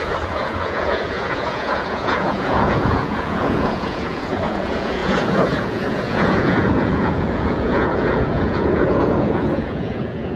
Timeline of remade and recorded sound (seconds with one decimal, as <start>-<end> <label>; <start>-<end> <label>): 0.0-10.4 remade